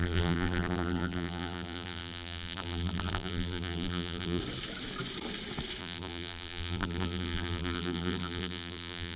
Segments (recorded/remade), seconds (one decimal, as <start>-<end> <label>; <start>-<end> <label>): 0.0-4.4 remade; 4.4-5.8 recorded; 5.8-9.2 remade